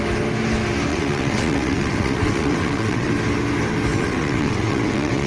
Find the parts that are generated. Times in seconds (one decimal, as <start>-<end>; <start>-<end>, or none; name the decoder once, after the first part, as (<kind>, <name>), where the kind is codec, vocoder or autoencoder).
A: 0.9-3.1 (vocoder, WaveNeXt); 3.9-5.3